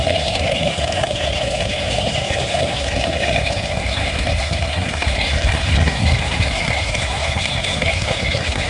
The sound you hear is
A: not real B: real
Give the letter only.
A